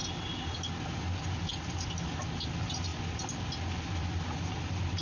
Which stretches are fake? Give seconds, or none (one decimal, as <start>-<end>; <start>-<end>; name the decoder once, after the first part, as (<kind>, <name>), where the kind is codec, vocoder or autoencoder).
none